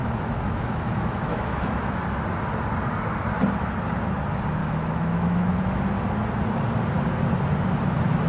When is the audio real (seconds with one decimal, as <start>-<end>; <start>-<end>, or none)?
2.0-4.6; 5.8-8.3